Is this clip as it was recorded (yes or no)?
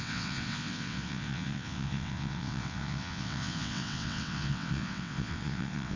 no